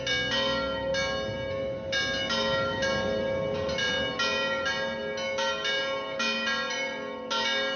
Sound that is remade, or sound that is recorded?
recorded